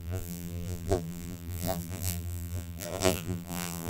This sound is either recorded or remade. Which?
remade